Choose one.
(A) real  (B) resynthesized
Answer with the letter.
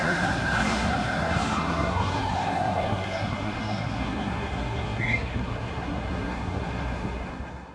B